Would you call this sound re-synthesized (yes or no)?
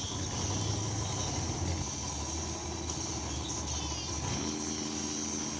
no